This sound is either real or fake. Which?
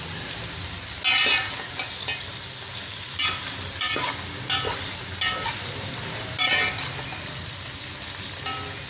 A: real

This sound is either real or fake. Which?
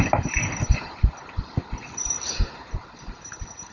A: real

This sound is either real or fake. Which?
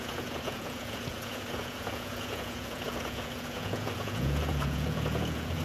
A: fake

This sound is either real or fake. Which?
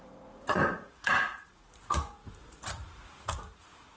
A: fake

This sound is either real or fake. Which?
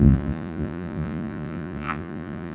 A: fake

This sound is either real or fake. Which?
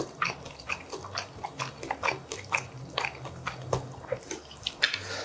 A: real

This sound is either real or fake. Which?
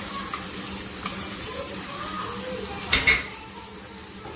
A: real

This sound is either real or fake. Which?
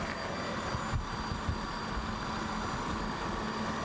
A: real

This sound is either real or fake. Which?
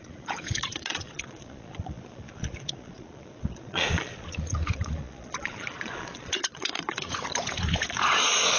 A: fake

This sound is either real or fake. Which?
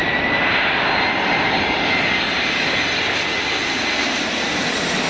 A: real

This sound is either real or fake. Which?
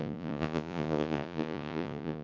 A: fake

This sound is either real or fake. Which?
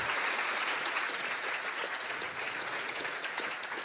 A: fake